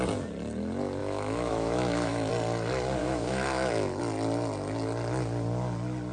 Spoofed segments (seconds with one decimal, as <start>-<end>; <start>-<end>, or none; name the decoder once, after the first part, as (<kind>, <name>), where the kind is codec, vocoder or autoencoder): 1.0-2.3 (autoencoder, DAC-VAE); 3.0-4.0